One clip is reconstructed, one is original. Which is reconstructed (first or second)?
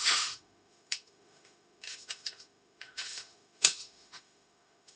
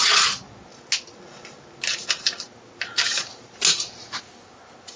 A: first